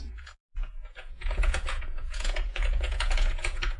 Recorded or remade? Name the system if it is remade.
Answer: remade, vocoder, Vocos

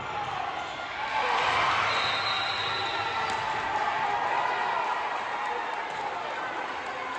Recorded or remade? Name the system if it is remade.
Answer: recorded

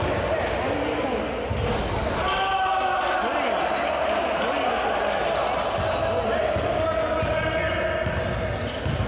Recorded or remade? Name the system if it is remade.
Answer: recorded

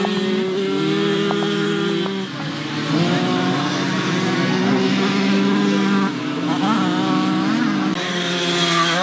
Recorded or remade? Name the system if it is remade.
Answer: recorded